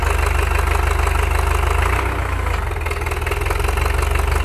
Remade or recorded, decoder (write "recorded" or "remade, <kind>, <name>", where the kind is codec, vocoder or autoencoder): recorded